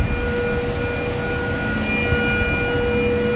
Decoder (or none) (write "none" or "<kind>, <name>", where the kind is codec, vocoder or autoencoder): none